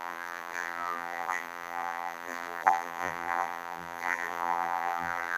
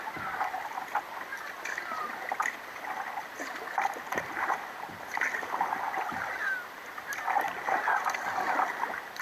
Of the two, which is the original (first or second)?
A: second